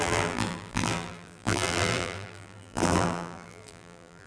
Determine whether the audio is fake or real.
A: fake